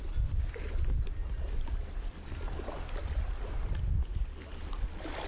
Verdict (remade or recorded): recorded